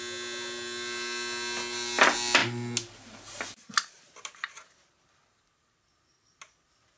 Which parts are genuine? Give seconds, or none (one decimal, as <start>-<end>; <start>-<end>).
0.0-7.0